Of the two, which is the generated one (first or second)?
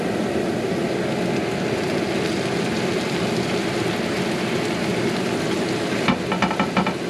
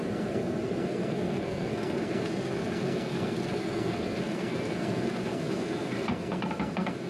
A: second